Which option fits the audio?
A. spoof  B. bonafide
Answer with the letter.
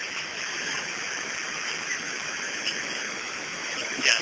A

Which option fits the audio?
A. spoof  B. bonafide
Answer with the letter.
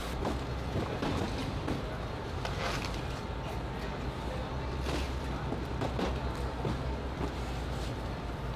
B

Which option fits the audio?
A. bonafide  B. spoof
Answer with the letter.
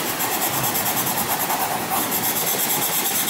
A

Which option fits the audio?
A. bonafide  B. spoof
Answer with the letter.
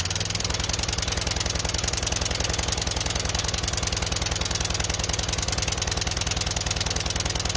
A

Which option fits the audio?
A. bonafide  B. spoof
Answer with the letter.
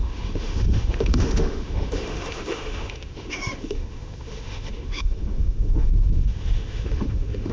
B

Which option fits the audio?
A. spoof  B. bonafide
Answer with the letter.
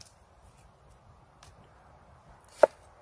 B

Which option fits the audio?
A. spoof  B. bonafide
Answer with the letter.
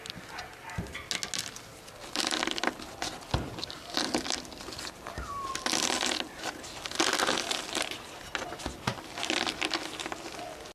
B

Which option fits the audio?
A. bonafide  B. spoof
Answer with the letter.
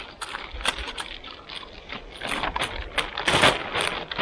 A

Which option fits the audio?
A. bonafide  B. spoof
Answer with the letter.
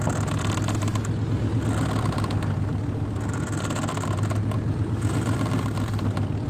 A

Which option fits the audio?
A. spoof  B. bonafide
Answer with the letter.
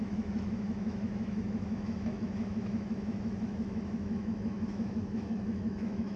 A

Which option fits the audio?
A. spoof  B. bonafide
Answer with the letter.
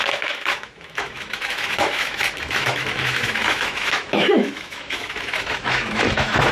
A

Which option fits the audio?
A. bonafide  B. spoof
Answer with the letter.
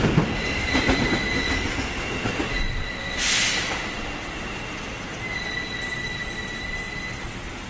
A